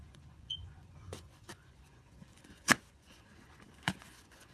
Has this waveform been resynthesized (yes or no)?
yes